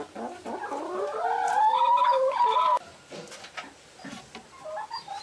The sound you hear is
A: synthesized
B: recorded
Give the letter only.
B